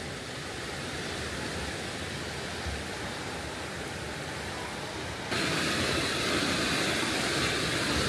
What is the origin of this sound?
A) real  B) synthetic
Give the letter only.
A